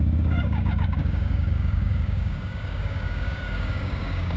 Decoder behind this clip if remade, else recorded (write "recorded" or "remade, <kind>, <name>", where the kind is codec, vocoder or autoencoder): remade, codec, DAC